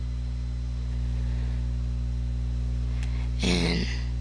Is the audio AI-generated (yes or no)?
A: no